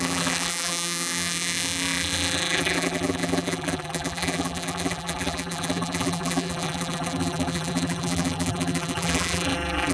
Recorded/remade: remade